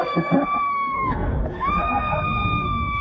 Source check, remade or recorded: remade